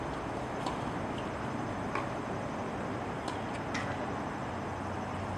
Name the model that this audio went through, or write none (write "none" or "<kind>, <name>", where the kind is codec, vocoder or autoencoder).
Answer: none